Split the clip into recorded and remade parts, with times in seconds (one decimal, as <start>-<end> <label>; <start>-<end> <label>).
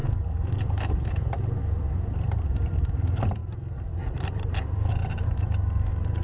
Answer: 0.0-1.1 recorded; 1.1-3.4 remade; 3.4-3.9 recorded; 3.9-6.2 remade